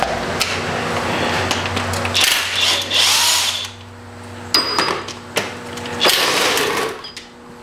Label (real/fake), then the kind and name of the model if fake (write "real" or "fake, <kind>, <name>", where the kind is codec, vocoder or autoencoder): real